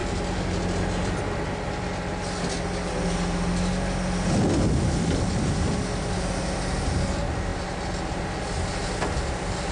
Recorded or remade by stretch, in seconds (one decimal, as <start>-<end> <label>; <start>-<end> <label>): 0.0-9.7 recorded